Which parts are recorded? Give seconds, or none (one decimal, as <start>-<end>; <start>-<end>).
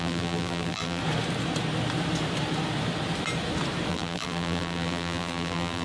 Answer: 1.0-3.9